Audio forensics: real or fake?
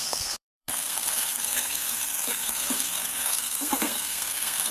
fake